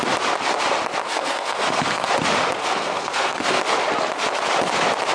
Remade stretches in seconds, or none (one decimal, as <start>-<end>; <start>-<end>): 1.0-2.1; 2.6-3.6